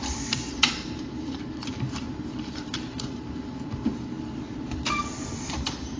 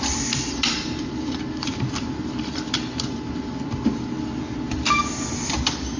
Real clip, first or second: second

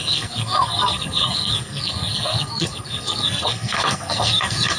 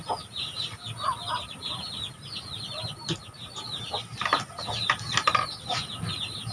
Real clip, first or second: second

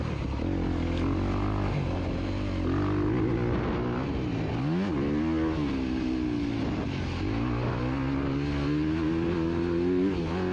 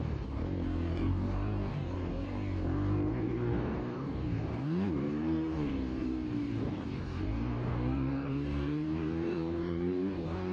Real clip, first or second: first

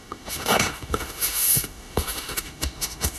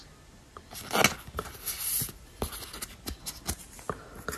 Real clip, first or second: second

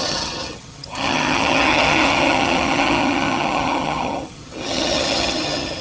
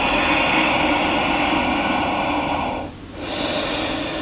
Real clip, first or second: second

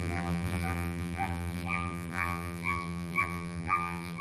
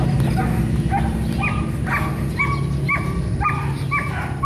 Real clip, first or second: second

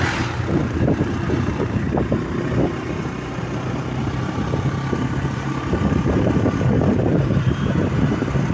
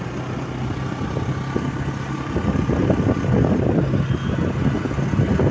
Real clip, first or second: second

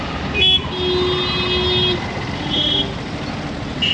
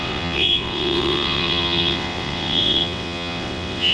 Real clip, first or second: first